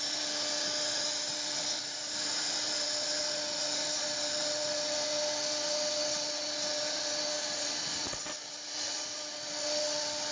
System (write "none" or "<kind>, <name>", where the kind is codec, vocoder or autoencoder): none